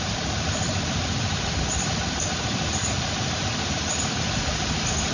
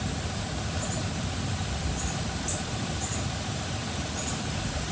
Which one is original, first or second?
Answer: second